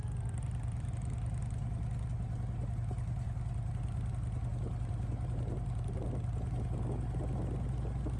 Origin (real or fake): real